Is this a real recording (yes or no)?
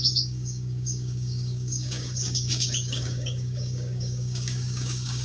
no